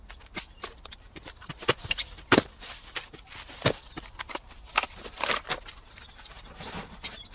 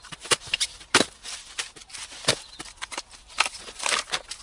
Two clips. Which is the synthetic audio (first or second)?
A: first